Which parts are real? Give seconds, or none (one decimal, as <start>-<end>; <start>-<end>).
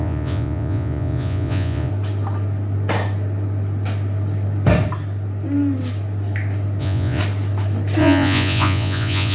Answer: 1.9-6.8; 7.2-8.0